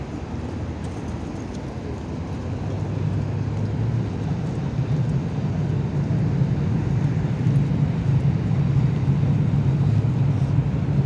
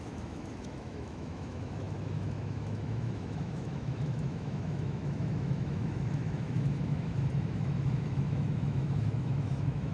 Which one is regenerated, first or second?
second